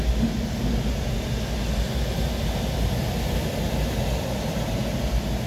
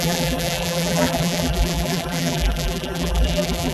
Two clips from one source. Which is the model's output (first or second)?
second